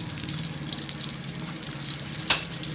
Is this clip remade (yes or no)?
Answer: no